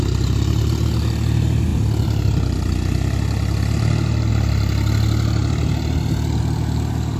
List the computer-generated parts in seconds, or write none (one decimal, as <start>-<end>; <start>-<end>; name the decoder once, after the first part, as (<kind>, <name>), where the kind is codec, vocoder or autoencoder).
5.4-6.4 (vocoder, BigVGAN v2)